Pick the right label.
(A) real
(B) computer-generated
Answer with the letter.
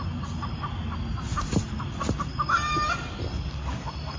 A